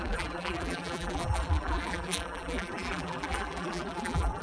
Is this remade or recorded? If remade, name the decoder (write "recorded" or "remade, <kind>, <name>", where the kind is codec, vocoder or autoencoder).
remade, vocoder, BigVGAN v2